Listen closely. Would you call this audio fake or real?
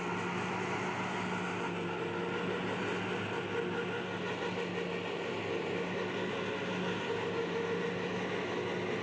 real